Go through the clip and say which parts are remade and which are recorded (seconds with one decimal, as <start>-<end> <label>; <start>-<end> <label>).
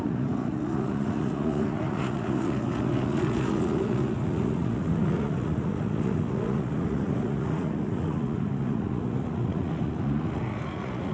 0.0-11.1 remade